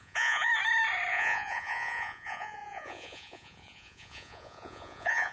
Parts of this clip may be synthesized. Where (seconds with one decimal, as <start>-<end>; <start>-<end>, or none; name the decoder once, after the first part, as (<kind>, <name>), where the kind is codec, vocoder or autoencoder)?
0.0-0.5 (vocoder, Vocos); 1.1-5.3